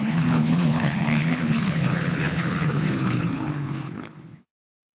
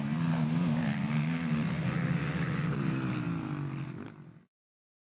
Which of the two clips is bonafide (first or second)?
second